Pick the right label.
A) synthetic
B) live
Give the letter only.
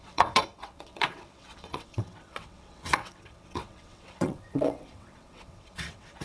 A